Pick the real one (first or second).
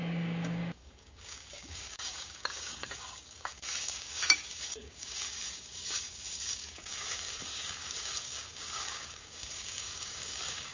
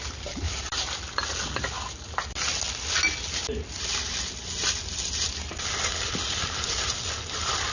second